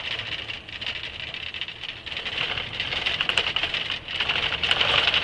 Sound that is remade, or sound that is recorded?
recorded